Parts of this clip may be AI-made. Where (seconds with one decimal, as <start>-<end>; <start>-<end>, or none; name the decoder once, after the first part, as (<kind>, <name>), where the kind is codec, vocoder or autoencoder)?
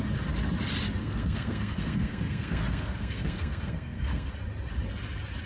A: 1.0-4.3 (codec, SNAC)